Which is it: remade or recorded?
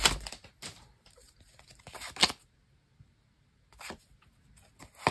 recorded